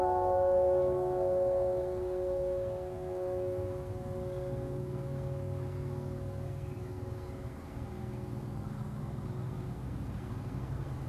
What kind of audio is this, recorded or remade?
remade